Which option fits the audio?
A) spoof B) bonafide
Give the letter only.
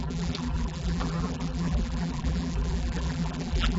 A